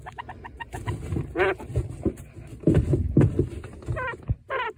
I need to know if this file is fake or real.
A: real